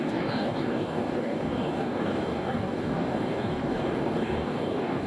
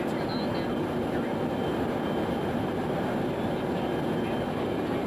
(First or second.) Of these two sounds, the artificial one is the first